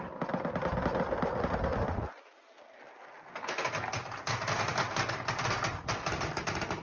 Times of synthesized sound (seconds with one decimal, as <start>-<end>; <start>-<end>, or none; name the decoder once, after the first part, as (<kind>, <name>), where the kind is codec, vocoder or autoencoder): none